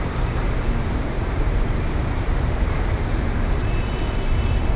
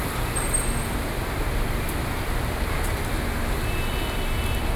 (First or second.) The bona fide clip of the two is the second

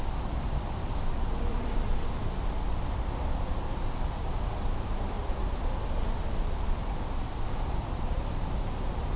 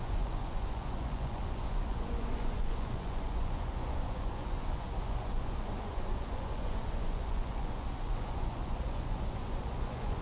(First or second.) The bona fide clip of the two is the first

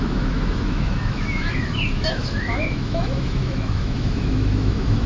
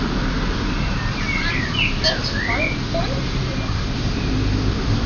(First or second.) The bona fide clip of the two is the second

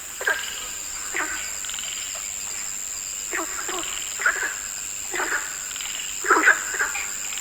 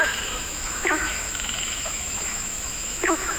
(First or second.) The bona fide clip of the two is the first